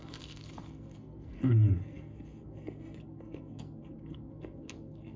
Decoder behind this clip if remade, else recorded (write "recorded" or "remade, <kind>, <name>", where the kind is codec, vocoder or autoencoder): remade, codec, SNAC